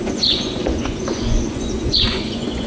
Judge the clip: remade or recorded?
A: remade